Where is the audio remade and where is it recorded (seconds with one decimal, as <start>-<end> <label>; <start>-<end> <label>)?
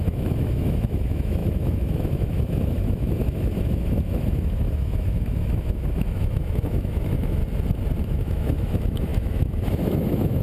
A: 0.0-7.4 remade; 7.4-8.0 recorded; 8.0-10.4 remade